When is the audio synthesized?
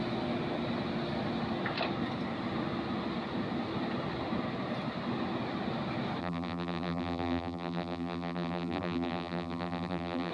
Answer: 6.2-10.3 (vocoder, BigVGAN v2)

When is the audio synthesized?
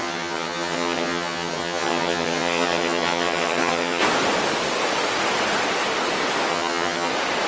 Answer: 0.0-4.0 (vocoder, HiFi-GAN); 6.5-7.1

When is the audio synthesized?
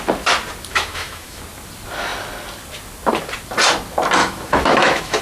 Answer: 0.7-1.4 (autoencoder, DAC-VAE); 4.2-5.2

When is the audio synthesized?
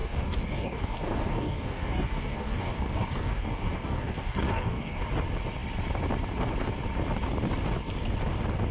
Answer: 0.0-5.0 (codec, DAC)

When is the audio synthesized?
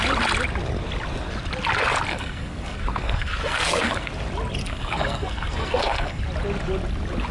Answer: 2.1-4.1 (codec, SNAC); 4.6-6.2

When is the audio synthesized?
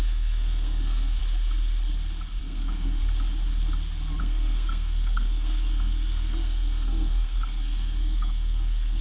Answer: 0.0-1.2 (codec, SNAC); 2.4-3.0; 4.2-9.0